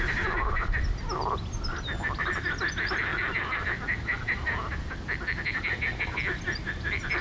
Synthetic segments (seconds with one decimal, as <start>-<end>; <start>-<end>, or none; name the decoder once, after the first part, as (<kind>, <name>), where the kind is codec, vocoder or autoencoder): none